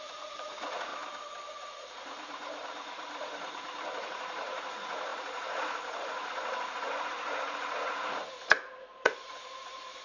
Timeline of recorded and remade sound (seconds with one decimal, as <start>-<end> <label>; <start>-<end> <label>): 0.0-0.9 remade; 0.9-1.5 recorded; 1.5-10.0 remade